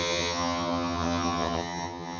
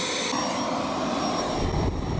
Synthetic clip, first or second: first